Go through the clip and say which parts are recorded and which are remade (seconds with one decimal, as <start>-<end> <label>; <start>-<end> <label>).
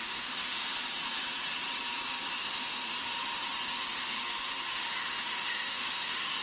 0.0-0.6 remade; 0.6-2.4 recorded; 2.4-3.0 remade; 3.0-4.7 recorded; 4.7-6.4 remade